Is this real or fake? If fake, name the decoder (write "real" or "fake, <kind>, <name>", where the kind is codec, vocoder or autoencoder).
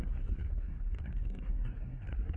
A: fake, codec, SNAC